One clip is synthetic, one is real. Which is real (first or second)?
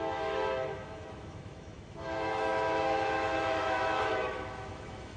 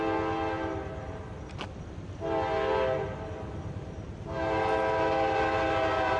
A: second